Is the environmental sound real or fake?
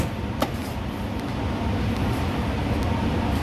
real